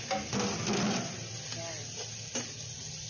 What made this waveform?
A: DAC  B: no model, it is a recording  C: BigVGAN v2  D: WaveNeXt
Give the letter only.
B